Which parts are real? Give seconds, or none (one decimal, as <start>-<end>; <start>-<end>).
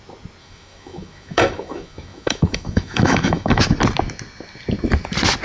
0.0-0.4; 3.6-5.4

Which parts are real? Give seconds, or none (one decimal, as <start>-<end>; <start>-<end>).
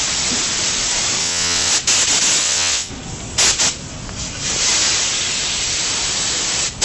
0.0-1.2; 1.7-2.4; 2.9-6.8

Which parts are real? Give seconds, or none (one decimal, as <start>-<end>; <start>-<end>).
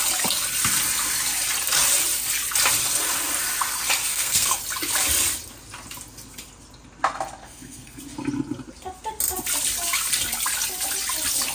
0.0-4.1; 4.6-7.4; 8.0-11.5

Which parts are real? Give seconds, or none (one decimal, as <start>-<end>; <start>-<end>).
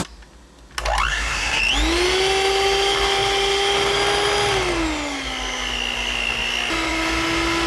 0.0-1.1; 1.6-7.7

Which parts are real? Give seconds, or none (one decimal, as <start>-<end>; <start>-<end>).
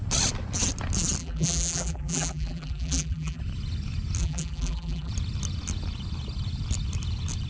0.0-1.2; 3.4-4.2; 5.1-7.5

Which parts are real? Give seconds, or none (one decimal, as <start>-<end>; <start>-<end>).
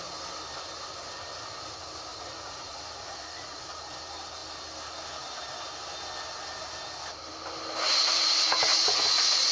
0.0-2.1; 3.6-8.7